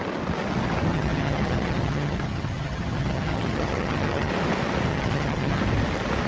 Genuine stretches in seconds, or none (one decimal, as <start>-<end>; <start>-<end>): 0.0-0.9; 4.3-4.9; 5.6-6.3